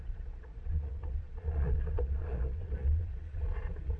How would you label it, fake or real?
fake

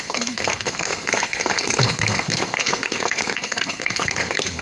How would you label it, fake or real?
fake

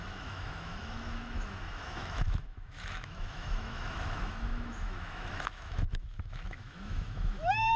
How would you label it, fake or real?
fake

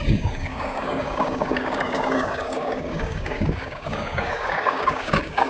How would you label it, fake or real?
fake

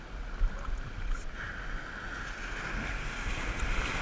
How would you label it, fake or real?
real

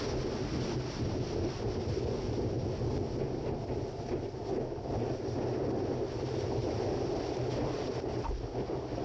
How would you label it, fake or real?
real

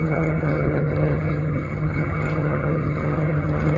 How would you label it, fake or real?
fake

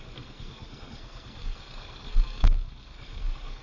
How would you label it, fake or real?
fake